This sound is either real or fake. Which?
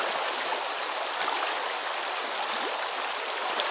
real